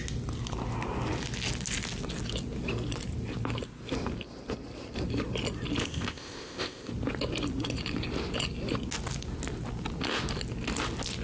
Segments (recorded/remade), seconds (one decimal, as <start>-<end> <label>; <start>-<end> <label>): 0.0-5.8 recorded; 5.8-6.9 remade; 6.9-11.2 recorded